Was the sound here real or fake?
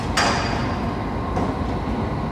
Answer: real